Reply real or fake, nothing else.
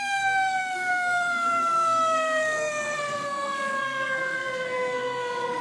fake